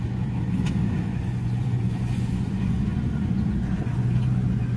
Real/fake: fake